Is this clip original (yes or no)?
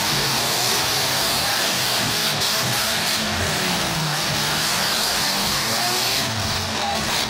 no